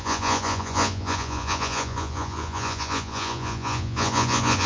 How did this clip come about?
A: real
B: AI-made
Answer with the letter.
B